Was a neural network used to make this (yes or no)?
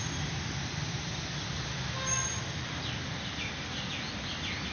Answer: no